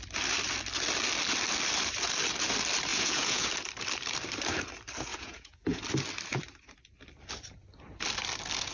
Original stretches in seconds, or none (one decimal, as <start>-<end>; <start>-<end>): 0.0-2.9; 3.5-5.1; 5.8-8.7